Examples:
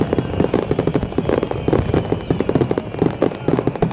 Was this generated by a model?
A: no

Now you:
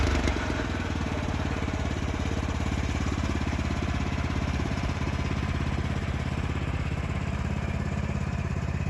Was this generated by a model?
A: yes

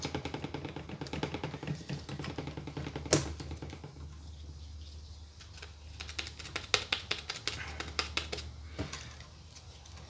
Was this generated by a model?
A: no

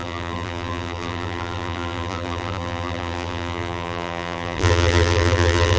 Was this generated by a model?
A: yes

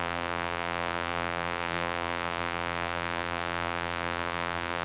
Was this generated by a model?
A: yes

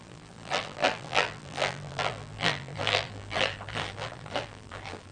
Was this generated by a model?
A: yes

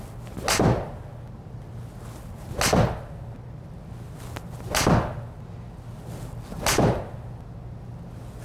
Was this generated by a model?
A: no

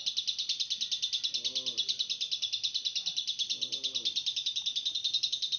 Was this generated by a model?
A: no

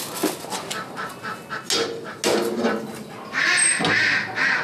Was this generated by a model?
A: no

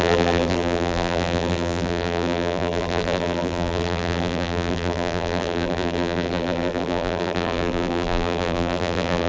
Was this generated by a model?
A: yes